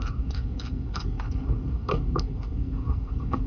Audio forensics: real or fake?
fake